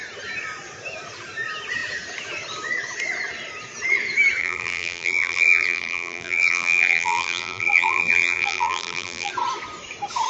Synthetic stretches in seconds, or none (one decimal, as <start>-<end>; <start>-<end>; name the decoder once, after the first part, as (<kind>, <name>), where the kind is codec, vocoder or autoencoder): 4.4-9.3 (vocoder, BigVGAN v2)